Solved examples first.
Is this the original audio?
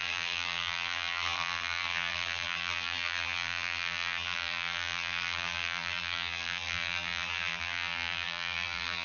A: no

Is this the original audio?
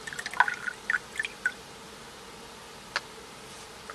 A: yes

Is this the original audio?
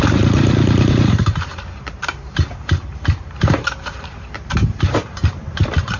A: no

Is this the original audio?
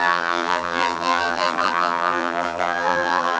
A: no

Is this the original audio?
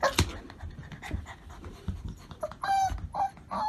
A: yes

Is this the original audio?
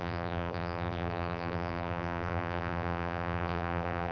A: no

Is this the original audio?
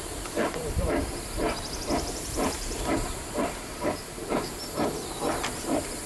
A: no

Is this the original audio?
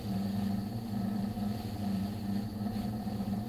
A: no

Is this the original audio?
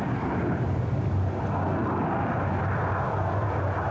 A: yes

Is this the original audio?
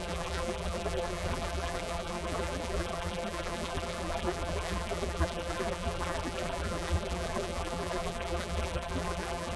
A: no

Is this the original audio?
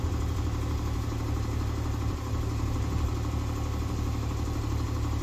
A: yes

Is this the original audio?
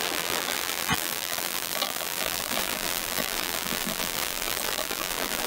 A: no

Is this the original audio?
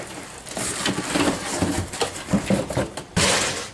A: yes